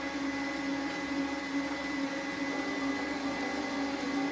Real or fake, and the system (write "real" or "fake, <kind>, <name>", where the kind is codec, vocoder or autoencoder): real